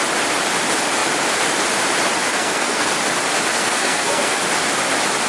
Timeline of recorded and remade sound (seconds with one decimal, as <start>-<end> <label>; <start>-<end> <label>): 0.0-2.3 recorded; 2.3-2.9 remade; 2.9-3.6 recorded; 3.6-4.4 remade; 4.4-5.3 recorded